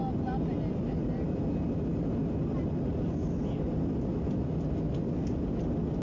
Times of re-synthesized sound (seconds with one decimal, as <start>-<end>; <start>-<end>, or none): none